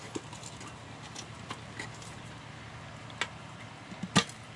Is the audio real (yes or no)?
yes